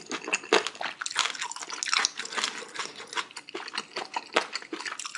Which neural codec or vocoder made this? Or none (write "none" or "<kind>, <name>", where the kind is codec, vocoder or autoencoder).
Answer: none